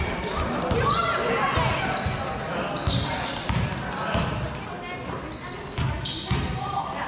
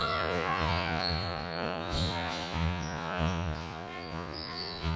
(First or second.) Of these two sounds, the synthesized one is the second